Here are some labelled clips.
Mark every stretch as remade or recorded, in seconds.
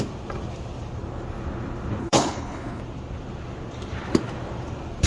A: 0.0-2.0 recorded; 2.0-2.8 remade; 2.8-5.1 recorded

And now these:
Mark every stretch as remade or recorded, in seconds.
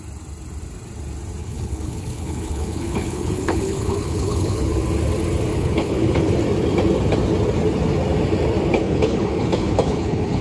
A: 0.0-1.4 recorded; 1.4-4.7 remade; 4.7-5.5 recorded; 5.5-6.3 remade; 6.3-8.8 recorded; 8.8-10.4 remade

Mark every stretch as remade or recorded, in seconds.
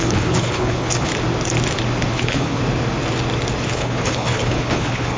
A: 0.0-1.1 remade; 1.1-2.1 recorded; 2.1-2.6 remade; 2.6-3.7 recorded; 3.7-5.2 remade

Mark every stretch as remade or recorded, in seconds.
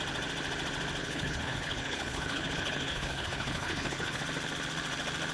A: 0.0-1.0 recorded; 1.0-4.2 remade; 4.2-5.3 recorded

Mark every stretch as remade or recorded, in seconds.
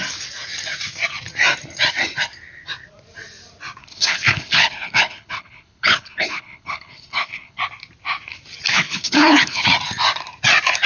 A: 0.0-3.8 recorded; 3.8-7.6 remade; 7.6-8.7 recorded; 8.7-9.6 remade; 9.6-10.9 recorded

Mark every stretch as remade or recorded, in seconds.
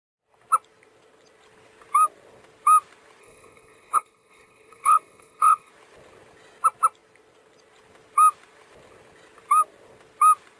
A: 0.0-3.2 recorded; 3.2-5.7 remade; 5.7-10.6 recorded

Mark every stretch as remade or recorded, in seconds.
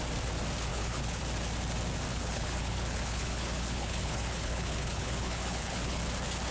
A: 0.0-0.7 recorded; 0.7-1.2 remade; 1.2-2.1 recorded; 2.1-6.0 remade; 6.0-6.5 recorded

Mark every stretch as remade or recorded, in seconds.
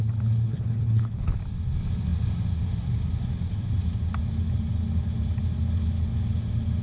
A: 0.0-0.5 recorded; 0.5-1.4 remade; 1.4-6.8 recorded